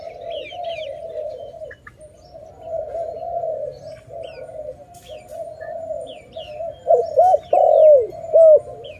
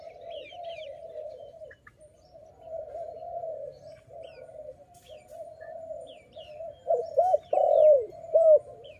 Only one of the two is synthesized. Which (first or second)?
second